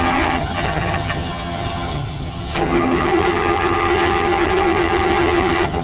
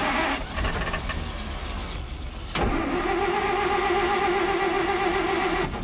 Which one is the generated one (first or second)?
first